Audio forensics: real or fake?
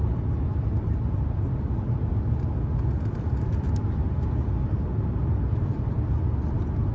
real